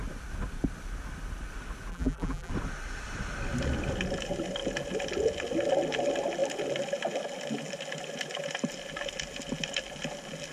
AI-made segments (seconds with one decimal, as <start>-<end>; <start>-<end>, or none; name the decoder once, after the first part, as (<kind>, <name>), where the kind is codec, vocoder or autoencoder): 1.9-2.5 (vocoder, BigVGAN v2)